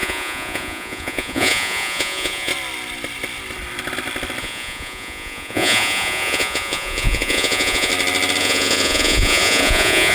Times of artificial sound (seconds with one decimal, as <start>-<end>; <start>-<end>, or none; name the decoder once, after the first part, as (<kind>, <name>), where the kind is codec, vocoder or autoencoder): 0.0-2.5 (vocoder, Vocos); 4.4-7.9; 8.4-10.1